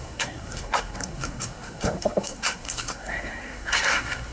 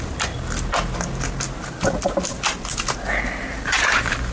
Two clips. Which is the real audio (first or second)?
second